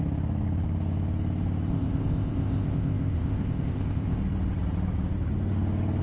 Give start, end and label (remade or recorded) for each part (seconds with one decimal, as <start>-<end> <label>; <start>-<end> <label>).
0.0-1.7 recorded; 1.7-4.2 remade; 4.2-6.0 recorded

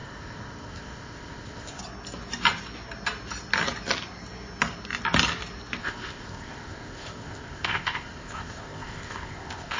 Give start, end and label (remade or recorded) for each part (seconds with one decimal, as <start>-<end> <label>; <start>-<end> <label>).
0.0-1.8 remade; 1.8-5.8 recorded; 5.8-9.8 remade

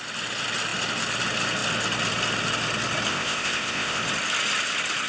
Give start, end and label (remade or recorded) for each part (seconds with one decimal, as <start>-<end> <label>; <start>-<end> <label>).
0.0-3.1 recorded; 3.1-4.0 remade; 4.0-5.1 recorded

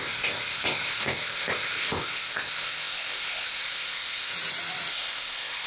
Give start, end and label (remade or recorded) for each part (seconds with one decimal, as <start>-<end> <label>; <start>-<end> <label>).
0.0-4.3 remade; 4.3-4.9 recorded; 4.9-5.7 remade